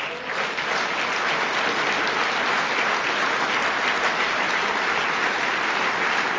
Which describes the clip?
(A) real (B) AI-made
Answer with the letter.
A